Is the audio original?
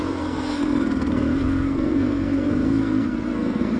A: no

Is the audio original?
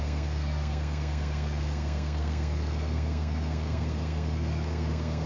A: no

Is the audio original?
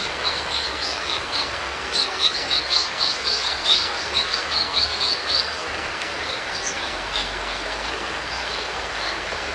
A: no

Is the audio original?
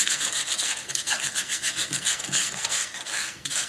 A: no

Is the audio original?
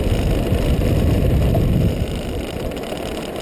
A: yes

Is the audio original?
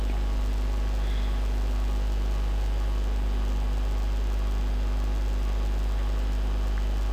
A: yes